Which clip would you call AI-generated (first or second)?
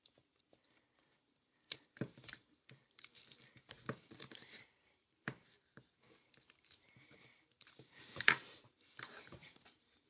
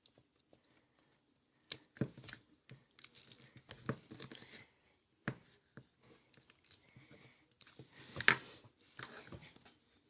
first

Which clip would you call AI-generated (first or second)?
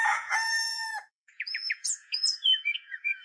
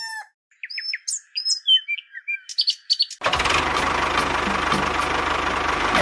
first